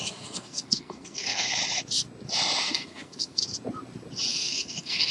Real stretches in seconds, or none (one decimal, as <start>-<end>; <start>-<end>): 1.6-2.6; 3.4-4.3